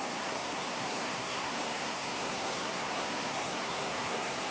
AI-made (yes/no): yes